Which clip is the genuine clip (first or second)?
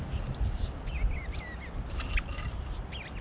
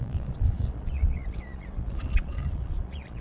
first